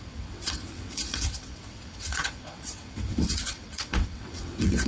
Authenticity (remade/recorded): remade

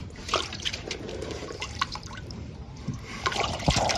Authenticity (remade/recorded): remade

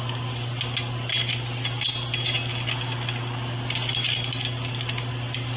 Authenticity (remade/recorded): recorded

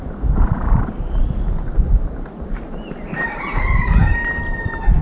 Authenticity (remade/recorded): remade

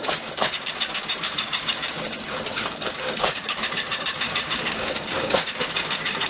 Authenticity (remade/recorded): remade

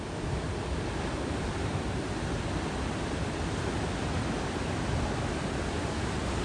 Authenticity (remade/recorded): recorded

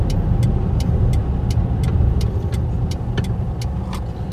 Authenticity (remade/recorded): recorded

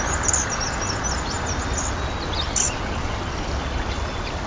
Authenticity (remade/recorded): recorded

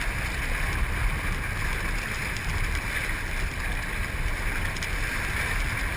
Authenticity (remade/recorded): recorded